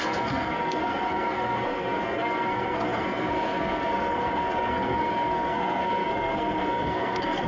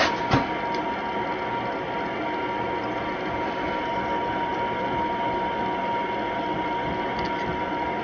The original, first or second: second